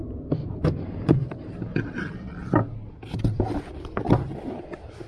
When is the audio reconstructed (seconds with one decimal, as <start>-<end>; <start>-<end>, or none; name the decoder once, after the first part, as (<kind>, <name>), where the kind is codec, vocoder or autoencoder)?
none